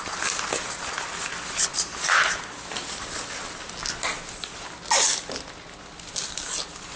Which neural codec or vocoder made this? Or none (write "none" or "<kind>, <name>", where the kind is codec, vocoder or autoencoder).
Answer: none